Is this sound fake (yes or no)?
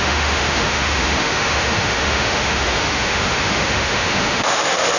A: yes